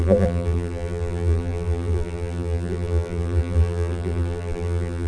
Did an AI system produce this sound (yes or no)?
yes